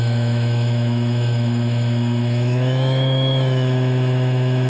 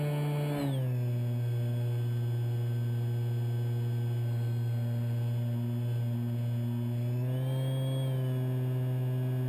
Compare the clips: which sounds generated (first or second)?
first